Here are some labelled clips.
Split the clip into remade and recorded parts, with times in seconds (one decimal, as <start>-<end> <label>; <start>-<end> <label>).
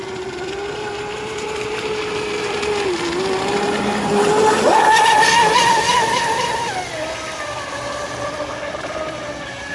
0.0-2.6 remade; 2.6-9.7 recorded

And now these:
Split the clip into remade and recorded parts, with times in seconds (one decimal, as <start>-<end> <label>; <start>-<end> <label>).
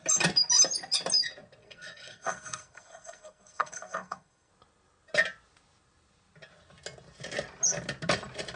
0.0-1.6 recorded; 1.6-4.5 remade; 4.5-8.6 recorded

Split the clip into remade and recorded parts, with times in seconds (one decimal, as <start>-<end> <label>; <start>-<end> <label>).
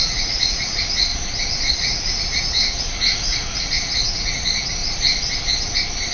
0.0-1.1 remade; 1.1-1.7 recorded; 1.7-4.8 remade; 4.8-6.1 recorded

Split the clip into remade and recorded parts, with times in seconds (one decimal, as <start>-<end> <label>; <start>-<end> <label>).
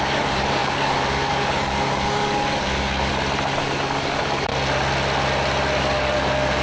0.0-3.1 remade; 3.1-3.6 recorded; 3.6-4.5 remade; 4.5-5.8 recorded; 5.8-6.6 remade